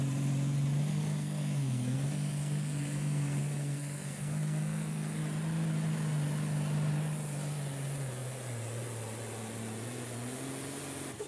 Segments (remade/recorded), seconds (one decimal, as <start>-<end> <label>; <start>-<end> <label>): 0.0-0.9 recorded; 0.9-5.2 remade; 5.2-11.3 recorded

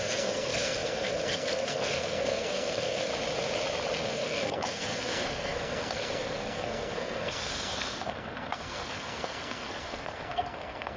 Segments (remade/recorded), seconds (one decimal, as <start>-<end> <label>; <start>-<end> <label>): 0.0-3.1 remade; 3.1-4.1 recorded; 4.1-11.0 remade

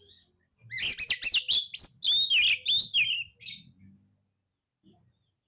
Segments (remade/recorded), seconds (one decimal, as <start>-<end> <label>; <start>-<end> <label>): 0.0-5.5 recorded

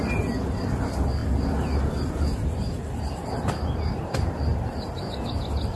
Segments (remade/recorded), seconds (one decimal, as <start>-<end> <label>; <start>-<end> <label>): 0.0-5.8 recorded

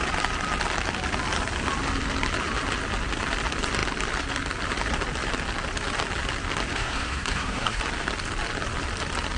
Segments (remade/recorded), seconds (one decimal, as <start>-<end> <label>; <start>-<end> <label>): 0.0-6.7 recorded; 6.7-7.8 remade; 7.8-9.4 recorded

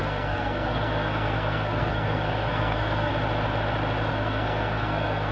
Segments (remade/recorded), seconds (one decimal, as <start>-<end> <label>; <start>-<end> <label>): 0.0-3.1 remade; 3.1-4.1 recorded; 4.1-5.3 remade

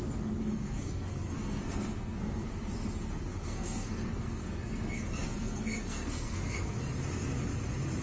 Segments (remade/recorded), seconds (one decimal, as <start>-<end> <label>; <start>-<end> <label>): 0.0-0.4 recorded; 0.4-2.5 remade; 2.5-3.3 recorded; 3.3-6.8 remade; 6.8-8.0 recorded